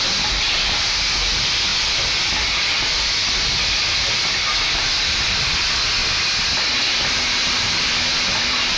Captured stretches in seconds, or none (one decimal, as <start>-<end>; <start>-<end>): 6.0-6.8